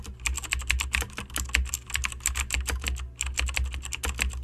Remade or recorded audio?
recorded